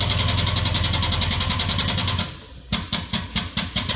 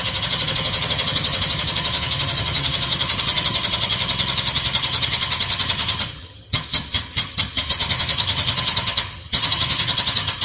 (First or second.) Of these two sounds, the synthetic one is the second